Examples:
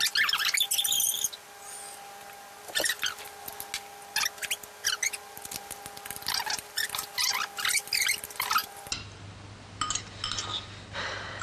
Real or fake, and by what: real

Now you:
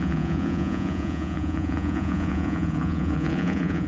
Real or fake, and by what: fake, vocoder, Vocos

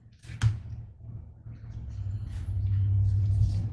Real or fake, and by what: real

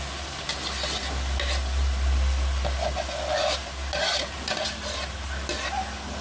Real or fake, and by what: real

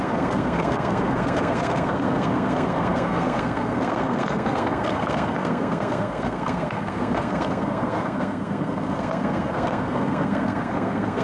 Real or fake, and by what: fake, codec, SNAC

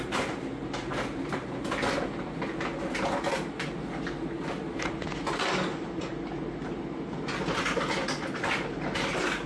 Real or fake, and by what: real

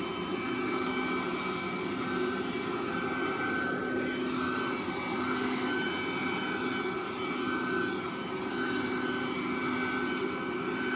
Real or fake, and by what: real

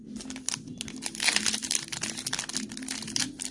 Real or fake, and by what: real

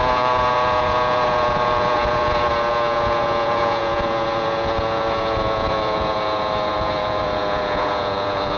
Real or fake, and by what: fake, vocoder, Vocos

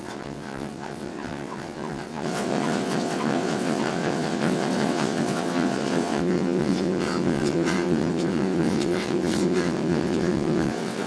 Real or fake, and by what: fake, vocoder, WaveNeXt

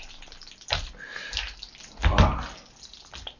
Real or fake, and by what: real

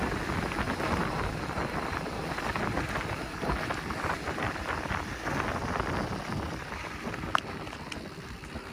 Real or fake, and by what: real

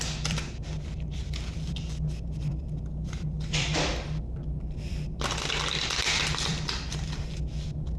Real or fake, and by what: fake, vocoder, BigVGAN v2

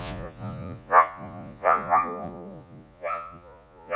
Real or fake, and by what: fake, vocoder, Vocos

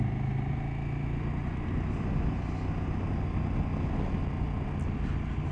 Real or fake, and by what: real